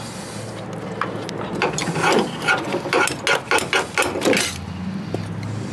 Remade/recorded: recorded